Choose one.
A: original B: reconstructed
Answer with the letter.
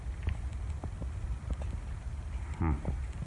A